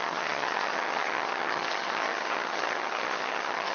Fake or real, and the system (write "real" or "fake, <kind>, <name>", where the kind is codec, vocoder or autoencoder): fake, vocoder, HiFi-GAN